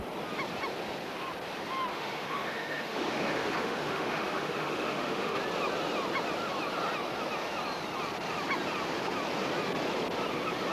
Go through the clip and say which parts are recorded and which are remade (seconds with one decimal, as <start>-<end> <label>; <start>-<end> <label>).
0.0-1.9 recorded; 1.9-5.4 remade; 5.4-10.7 recorded